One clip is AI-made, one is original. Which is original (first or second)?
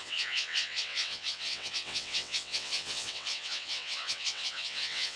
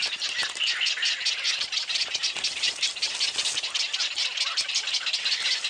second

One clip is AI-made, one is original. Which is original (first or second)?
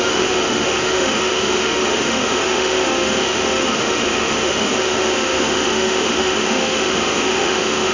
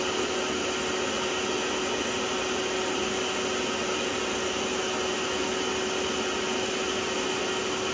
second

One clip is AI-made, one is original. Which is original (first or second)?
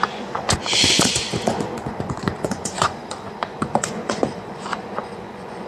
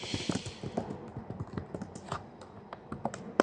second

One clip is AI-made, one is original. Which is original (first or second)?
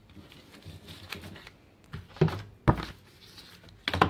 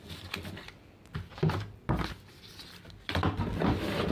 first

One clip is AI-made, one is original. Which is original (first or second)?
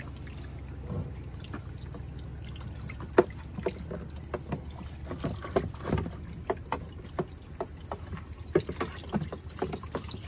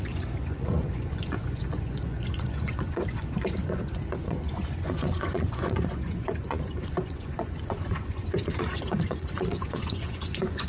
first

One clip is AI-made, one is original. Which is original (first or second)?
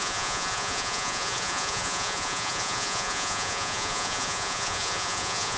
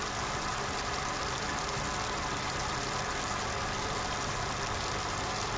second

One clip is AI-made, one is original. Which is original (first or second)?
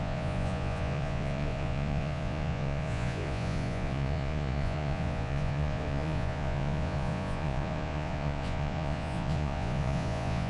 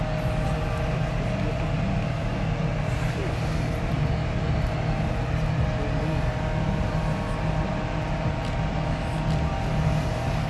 second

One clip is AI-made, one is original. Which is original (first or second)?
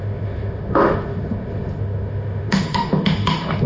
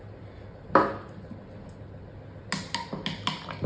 second